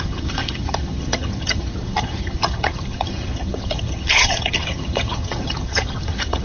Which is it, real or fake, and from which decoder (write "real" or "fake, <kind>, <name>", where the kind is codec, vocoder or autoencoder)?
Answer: fake, vocoder, HiFi-GAN